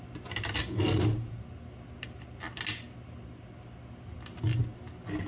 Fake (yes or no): no